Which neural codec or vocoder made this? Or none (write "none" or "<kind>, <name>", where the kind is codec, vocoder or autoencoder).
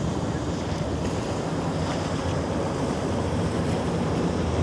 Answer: vocoder, BigVGAN v2